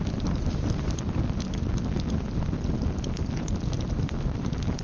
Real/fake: real